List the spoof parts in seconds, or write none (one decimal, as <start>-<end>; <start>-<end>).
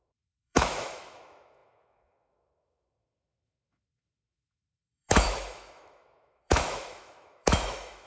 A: 0.0-8.1